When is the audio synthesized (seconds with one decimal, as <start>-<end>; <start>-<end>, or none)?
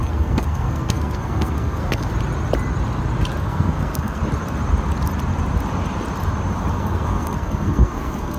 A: 0.0-2.1; 3.4-4.2; 6.7-8.4